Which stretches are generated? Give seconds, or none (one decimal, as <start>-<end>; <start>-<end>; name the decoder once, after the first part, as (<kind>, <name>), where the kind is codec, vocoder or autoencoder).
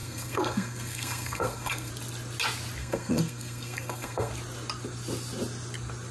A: 0.0-1.9 (codec, SNAC); 2.8-4.3